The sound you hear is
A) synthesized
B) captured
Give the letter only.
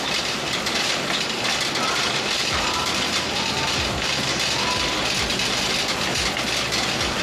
B